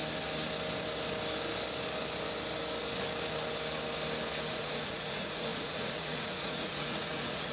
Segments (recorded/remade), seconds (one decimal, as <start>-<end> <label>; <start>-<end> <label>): 0.0-4.5 recorded; 4.5-7.5 remade